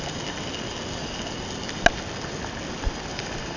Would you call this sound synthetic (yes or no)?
no